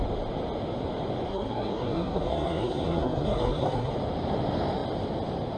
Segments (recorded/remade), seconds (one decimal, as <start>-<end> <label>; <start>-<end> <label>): 0.0-1.3 recorded; 1.3-3.9 remade; 3.9-5.6 recorded